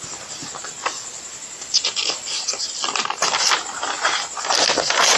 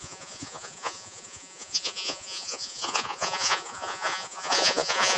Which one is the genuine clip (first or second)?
first